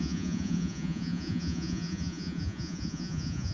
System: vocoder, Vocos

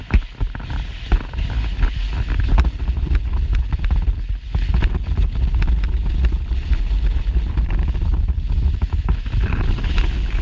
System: none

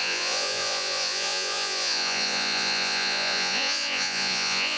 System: vocoder, Vocos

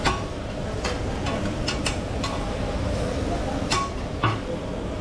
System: none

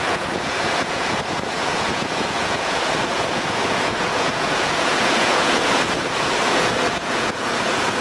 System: vocoder, Vocos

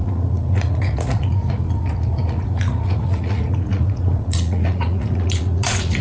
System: vocoder, Vocos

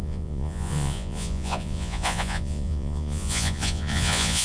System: vocoder, Vocos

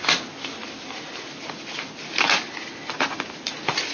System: none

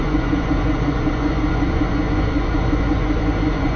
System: vocoder, Vocos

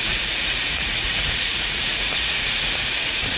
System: vocoder, Vocos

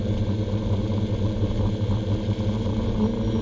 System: none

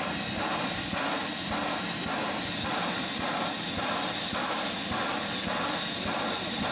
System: none